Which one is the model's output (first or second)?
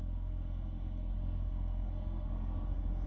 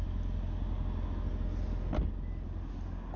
first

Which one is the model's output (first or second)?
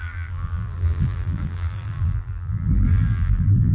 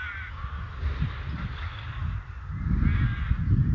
first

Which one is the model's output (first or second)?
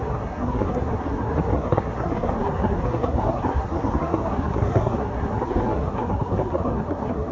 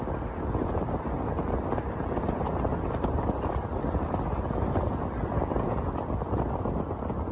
first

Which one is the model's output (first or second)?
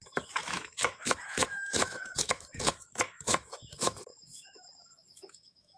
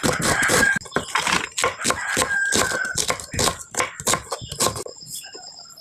first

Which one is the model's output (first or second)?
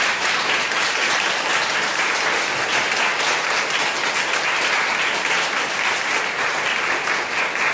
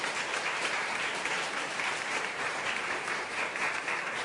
second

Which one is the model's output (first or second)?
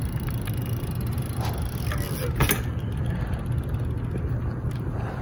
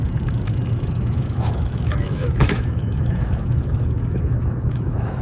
second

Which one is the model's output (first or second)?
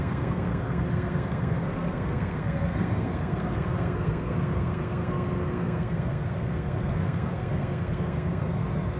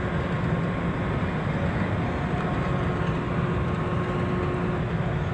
first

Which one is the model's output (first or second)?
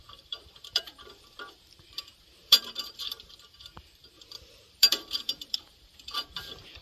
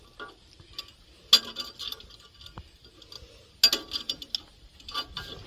first